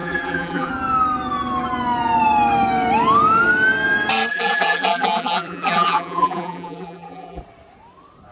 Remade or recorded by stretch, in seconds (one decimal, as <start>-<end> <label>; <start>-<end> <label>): 0.0-0.7 remade; 0.7-4.3 recorded; 4.3-7.4 remade; 7.4-8.3 recorded